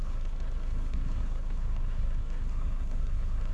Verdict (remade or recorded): remade